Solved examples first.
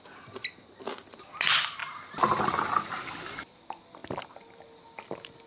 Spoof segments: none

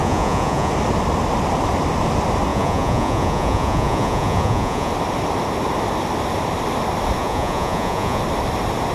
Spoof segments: 0.0-0.7 (vocoder, Vocos); 2.5-4.9; 7.2-8.2

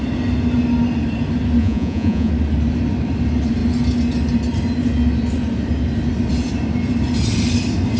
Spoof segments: 1.6-2.3 (vocoder, Vocos)

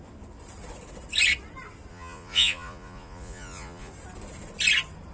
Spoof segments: 1.9-3.9 (vocoder, Vocos)